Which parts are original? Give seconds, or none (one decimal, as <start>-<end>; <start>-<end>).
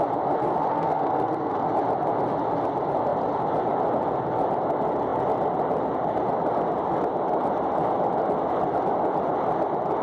0.0-0.7; 1.6-10.0